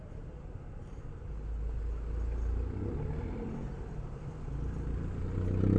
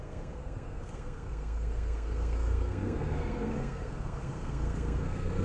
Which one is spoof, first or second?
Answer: second